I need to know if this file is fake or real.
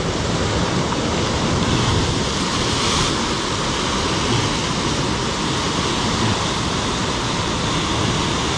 real